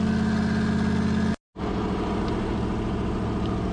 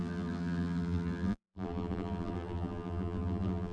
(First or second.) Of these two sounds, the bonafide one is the first